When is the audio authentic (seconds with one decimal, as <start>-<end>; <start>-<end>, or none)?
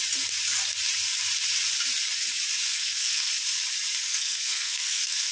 0.0-2.7; 3.3-4.1